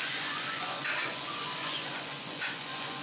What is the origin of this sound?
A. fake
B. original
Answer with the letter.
A